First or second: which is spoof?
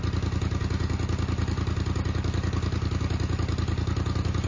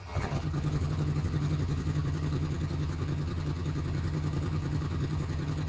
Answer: second